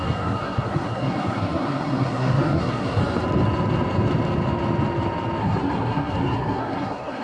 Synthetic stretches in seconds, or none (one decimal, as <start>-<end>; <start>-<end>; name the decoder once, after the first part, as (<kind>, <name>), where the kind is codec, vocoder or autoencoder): 0.0-3.0 (codec, SNAC); 5.4-7.2